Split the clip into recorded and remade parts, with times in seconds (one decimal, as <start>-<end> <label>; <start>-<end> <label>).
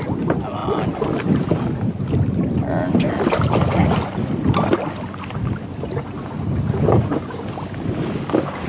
0.0-8.7 recorded